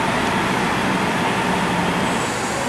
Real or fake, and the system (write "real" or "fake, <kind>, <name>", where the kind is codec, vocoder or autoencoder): real